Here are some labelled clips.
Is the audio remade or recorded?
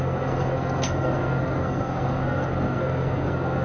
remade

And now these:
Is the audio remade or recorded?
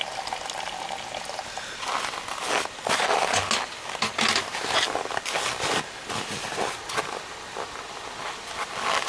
recorded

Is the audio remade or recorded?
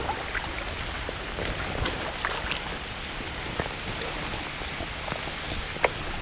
recorded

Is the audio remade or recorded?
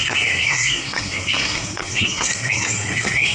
remade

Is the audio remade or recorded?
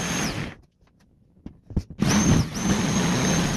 recorded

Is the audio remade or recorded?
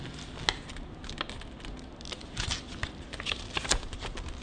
recorded